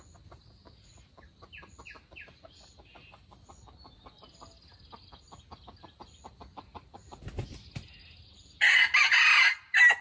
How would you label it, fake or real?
real